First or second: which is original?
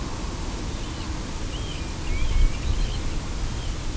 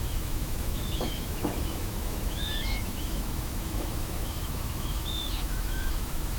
first